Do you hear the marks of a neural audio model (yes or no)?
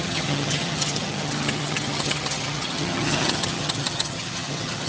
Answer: yes